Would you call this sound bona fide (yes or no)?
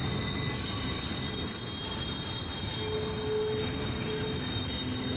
yes